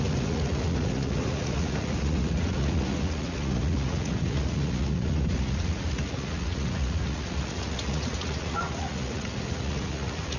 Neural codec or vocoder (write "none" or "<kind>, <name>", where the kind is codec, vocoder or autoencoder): vocoder, Vocos